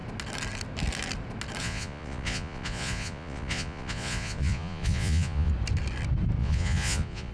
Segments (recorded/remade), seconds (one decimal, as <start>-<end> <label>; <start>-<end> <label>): 0.0-1.6 recorded; 1.6-5.5 remade; 5.5-6.4 recorded; 6.4-7.3 remade